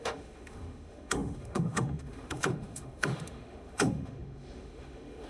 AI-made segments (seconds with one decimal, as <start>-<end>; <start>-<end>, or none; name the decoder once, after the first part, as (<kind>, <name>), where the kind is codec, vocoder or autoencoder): 0.0-5.3 (autoencoder, DAC-VAE)